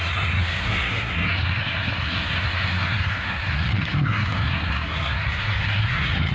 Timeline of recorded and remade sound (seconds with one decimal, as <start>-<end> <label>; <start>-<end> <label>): 0.0-6.3 remade